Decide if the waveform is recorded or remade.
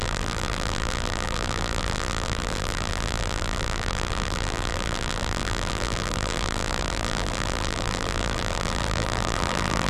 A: remade